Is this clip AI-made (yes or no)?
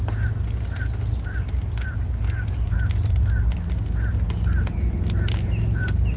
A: no